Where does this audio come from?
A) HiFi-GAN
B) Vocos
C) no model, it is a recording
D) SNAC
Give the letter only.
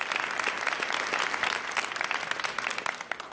C